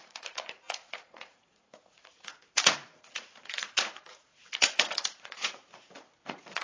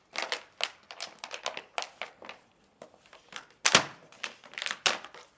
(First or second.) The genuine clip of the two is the second